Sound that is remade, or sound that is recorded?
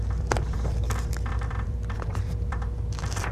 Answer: remade